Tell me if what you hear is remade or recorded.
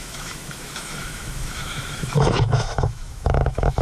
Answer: remade